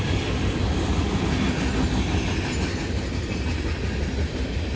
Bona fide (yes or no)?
yes